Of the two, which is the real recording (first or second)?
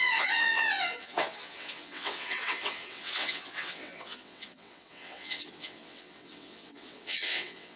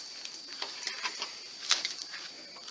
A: second